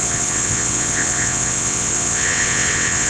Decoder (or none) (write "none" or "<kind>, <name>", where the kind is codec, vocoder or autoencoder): vocoder, WaveNeXt